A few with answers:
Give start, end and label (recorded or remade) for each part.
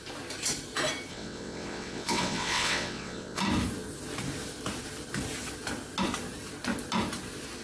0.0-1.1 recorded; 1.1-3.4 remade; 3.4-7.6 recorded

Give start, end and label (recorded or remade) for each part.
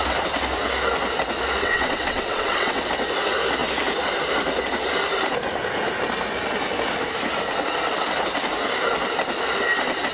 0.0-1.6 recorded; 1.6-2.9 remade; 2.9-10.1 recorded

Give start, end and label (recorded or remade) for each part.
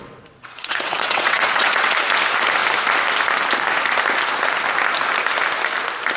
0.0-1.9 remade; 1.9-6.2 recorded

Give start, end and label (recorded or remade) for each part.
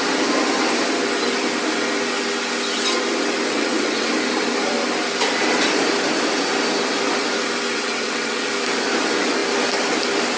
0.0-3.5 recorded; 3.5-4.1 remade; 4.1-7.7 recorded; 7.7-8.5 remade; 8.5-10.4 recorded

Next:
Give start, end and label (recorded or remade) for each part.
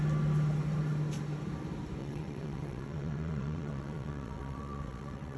0.0-2.0 recorded; 2.0-5.4 remade